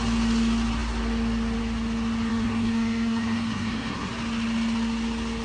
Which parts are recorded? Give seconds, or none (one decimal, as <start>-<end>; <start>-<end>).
0.0-2.3; 4.1-5.4